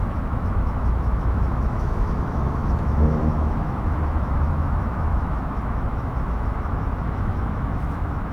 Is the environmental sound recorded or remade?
remade